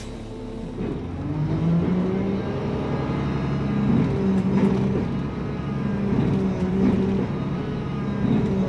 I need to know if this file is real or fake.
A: real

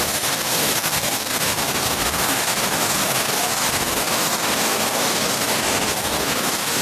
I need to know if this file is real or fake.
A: fake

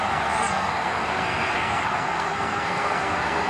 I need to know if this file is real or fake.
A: fake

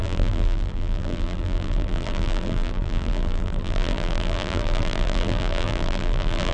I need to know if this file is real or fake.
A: fake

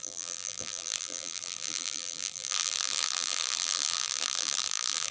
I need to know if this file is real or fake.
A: fake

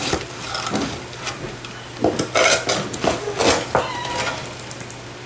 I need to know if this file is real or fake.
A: real